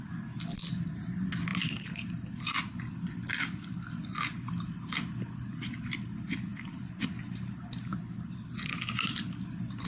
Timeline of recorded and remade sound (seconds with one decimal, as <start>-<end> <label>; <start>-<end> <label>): 0.0-9.9 recorded